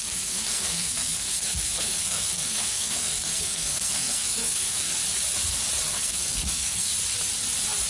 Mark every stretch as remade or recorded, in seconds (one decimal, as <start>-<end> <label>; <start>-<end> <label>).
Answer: 0.0-5.0 remade; 5.0-5.9 recorded; 5.9-6.9 remade; 6.9-7.9 recorded

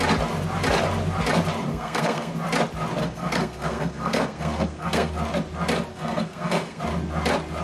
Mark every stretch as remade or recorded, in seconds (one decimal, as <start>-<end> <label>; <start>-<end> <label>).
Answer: 0.0-1.7 recorded; 1.7-2.3 remade; 2.3-3.0 recorded; 3.0-5.1 remade; 5.1-5.9 recorded; 5.9-6.8 remade; 6.8-7.6 recorded